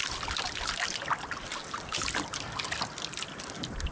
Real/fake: real